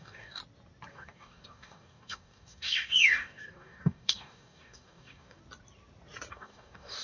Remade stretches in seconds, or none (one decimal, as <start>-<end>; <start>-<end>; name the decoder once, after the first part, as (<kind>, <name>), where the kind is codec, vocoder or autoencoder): 0.0-0.4 (codec, DAC); 0.9-5.4; 6.3-7.0